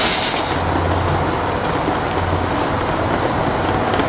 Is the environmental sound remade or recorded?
recorded